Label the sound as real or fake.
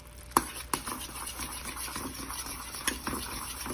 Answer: real